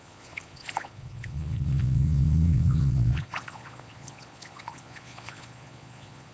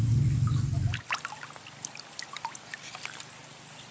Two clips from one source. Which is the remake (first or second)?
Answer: first